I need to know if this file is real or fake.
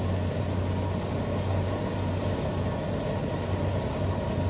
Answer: real